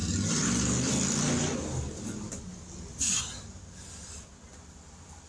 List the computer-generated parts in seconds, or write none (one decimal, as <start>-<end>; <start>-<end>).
none